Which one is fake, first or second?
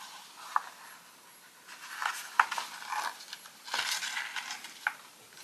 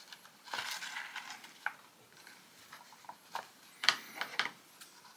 second